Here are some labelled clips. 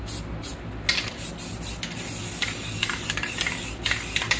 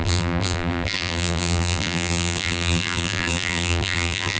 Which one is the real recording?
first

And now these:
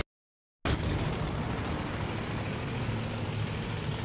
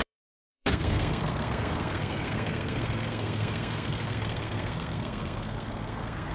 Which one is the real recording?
first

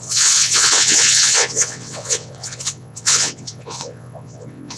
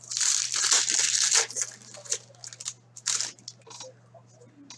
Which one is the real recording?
second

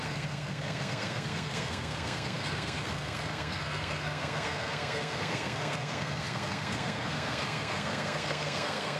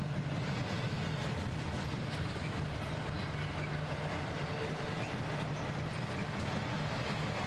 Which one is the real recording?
second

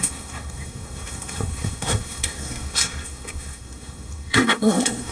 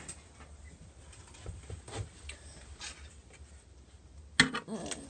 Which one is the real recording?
second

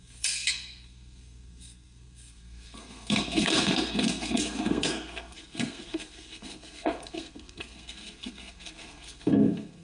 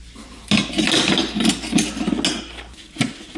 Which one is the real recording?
second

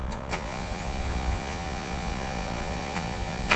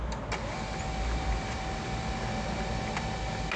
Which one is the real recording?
second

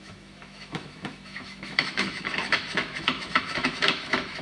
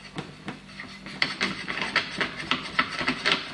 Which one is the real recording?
second